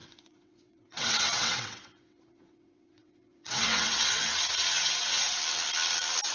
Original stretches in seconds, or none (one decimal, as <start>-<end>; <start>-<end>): 5.4-6.3